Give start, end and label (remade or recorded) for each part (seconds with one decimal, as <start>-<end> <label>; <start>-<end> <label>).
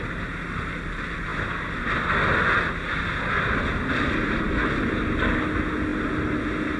0.0-6.8 recorded